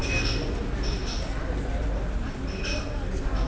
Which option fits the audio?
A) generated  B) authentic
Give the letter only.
B